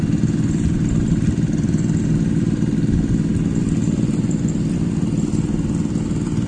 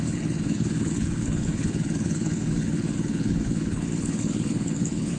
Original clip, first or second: first